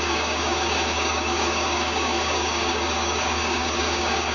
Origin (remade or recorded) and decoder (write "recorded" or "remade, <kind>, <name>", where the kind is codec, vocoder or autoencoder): remade, codec, DAC